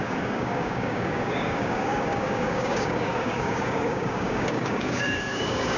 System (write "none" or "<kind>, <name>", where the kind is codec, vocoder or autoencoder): codec, DAC